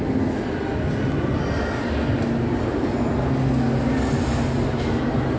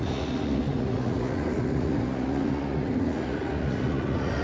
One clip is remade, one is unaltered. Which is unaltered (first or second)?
first